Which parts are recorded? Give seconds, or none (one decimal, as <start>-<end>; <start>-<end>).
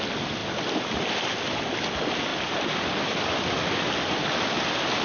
0.0-5.0